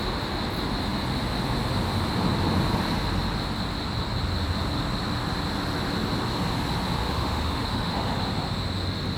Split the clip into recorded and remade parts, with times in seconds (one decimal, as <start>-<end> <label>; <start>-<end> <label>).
0.0-7.0 recorded; 7.0-8.2 remade; 8.2-9.2 recorded